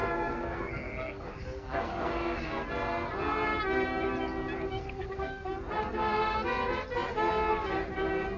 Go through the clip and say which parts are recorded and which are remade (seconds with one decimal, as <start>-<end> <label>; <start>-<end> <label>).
0.0-2.7 remade; 2.7-4.7 recorded; 4.7-5.5 remade; 5.5-8.4 recorded